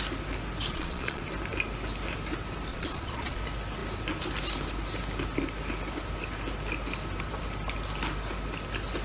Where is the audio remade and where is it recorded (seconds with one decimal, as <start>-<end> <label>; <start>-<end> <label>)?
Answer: 0.0-0.7 recorded; 0.7-1.2 remade; 1.2-2.7 recorded; 2.7-3.4 remade; 3.4-9.0 recorded